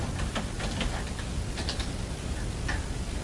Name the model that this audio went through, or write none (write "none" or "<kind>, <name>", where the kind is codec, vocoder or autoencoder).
none